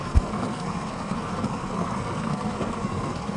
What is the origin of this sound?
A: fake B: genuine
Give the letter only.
A